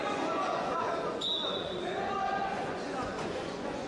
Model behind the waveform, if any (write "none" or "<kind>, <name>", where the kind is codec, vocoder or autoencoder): vocoder, Vocos